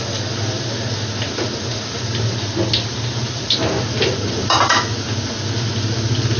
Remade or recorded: recorded